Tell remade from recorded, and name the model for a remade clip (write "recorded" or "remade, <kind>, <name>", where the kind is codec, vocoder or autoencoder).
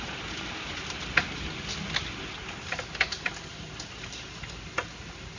recorded